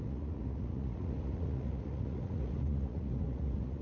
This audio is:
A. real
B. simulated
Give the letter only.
B